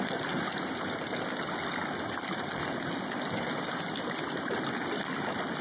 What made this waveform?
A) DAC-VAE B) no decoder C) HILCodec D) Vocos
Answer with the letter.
B